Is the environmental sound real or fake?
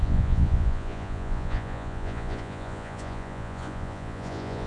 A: fake